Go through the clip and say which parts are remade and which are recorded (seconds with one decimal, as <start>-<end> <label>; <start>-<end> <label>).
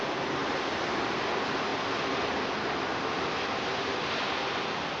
0.0-5.0 recorded